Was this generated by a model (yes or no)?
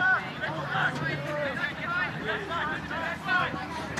yes